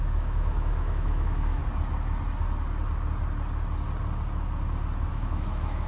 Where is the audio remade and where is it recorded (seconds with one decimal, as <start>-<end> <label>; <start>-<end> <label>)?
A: 0.0-1.6 remade; 1.6-5.1 recorded; 5.1-5.9 remade